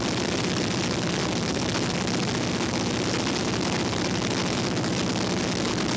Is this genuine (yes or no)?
yes